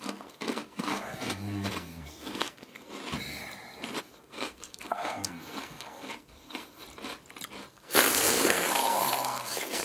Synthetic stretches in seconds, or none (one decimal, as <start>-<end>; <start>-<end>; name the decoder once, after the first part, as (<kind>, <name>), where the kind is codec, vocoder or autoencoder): 0.0-3.0 (codec, SNAC); 4.0-6.8; 7.7-9.8